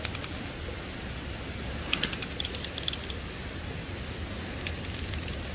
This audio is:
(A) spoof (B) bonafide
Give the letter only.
B